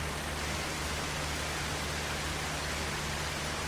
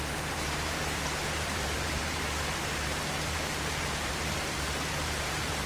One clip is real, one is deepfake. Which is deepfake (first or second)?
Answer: second